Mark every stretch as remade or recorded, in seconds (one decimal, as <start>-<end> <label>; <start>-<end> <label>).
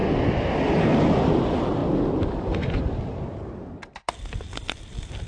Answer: 0.0-5.3 recorded